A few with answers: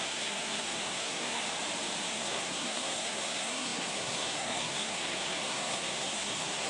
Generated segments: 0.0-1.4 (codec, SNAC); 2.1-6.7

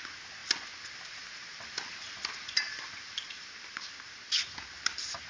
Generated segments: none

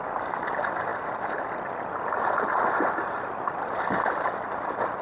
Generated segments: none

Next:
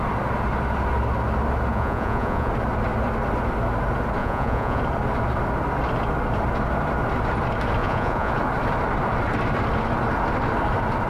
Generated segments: 1.7-2.5 (vocoder, Vocos); 4.2-4.8; 7.8-8.3